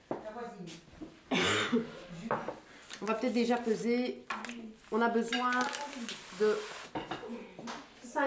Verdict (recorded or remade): recorded